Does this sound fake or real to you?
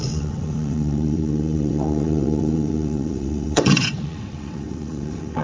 fake